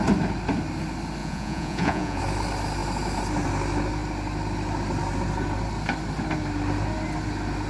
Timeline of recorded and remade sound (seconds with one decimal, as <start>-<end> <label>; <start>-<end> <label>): 0.0-1.2 recorded; 1.2-2.2 remade; 2.2-7.7 recorded